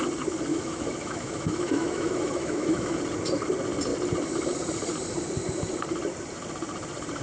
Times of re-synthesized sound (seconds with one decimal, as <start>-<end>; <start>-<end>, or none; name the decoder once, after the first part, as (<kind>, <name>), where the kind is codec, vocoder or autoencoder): 0.5-3.0 (autoencoder, DAC-VAE)